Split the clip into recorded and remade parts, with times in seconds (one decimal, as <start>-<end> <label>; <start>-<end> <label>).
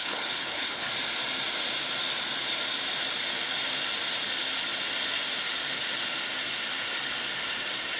0.0-0.9 remade; 0.9-8.0 recorded